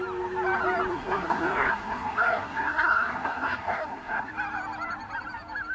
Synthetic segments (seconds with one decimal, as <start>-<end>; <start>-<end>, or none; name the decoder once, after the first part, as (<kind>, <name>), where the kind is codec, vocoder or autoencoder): 0.9-4.3 (codec, SNAC)